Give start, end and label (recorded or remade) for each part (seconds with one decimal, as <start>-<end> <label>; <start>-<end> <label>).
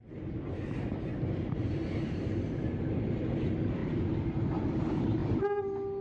0.0-6.0 recorded